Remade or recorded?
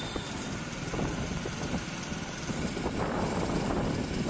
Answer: recorded